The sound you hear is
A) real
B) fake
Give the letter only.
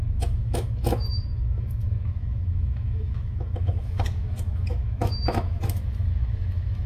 B